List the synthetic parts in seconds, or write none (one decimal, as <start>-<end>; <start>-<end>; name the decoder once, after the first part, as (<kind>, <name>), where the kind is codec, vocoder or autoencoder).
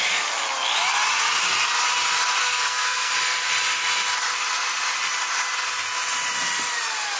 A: 2.4-3.1 (codec, SNAC)